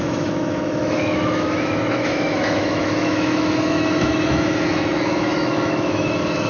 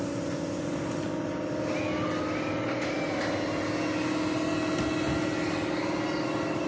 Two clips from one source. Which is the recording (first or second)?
second